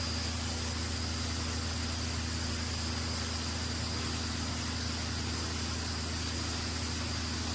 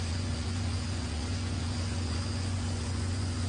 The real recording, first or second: first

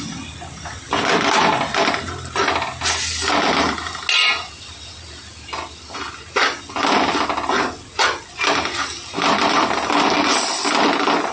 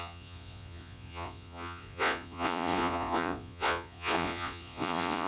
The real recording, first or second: first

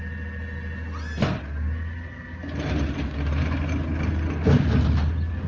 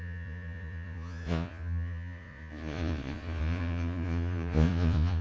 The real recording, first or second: first